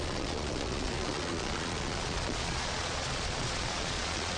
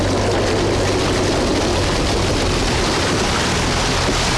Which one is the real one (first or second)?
second